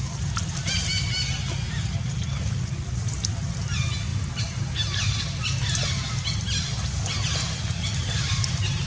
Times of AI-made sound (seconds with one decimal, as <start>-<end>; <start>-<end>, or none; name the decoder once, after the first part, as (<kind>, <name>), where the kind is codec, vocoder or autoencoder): none